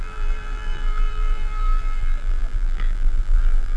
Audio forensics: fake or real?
fake